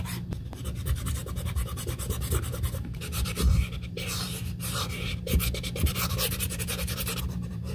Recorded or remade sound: remade